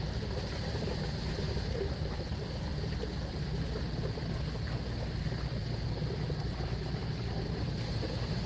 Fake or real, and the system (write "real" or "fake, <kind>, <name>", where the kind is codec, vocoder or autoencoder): real